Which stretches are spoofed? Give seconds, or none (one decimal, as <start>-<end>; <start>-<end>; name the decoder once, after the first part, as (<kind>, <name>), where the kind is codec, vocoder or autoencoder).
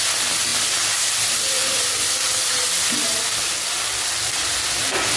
none